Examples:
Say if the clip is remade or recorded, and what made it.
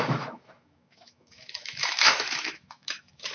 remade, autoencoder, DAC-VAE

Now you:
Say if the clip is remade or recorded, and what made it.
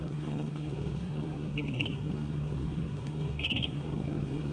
remade, codec, SNAC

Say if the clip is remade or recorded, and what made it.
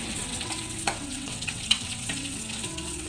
remade, vocoder, WaveNeXt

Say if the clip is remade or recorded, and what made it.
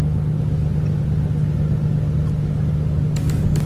recorded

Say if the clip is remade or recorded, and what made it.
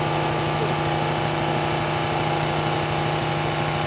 recorded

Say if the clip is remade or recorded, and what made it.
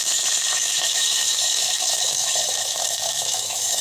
remade, autoencoder, DAC-VAE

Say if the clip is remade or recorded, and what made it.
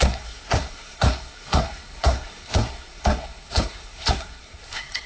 remade, codec, SNAC